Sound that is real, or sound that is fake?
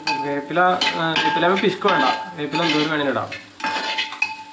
real